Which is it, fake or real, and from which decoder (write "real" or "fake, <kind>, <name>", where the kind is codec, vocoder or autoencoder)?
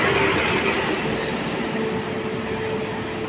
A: real